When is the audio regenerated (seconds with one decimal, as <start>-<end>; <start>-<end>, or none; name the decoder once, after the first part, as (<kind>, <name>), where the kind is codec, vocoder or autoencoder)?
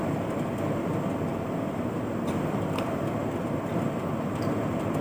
1.3-2.6 (vocoder, BigVGAN v2)